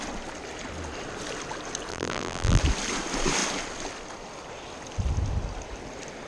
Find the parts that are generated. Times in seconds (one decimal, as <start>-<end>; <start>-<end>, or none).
1.9-2.6